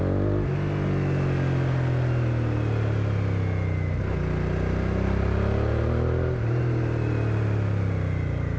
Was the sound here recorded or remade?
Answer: recorded